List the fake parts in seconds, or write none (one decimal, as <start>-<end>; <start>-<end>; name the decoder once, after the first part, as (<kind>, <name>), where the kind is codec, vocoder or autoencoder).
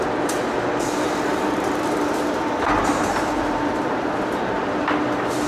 1.3-4.1 (vocoder, BigVGAN v2)